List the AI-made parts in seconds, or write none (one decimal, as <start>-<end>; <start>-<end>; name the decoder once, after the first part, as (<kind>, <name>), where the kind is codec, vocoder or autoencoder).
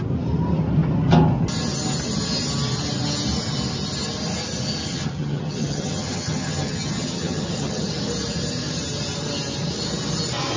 4.9-7.9 (vocoder, HiFi-GAN)